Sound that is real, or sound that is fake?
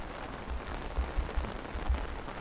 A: real